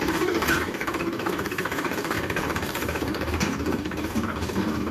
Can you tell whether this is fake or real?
fake